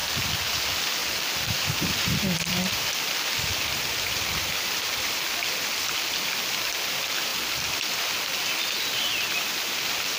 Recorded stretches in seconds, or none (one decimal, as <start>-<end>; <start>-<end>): 0.0-1.0; 5.2-7.3; 8.0-10.2